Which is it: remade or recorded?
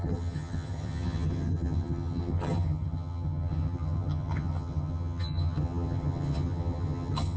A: remade